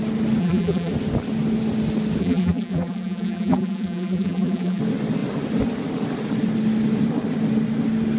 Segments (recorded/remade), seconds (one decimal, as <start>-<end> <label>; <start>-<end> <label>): 0.0-0.4 recorded; 0.4-0.9 remade; 0.9-2.2 recorded; 2.2-4.8 remade; 4.8-8.2 recorded